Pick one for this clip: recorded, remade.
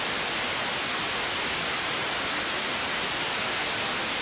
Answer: recorded